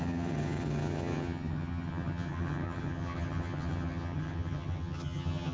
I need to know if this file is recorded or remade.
remade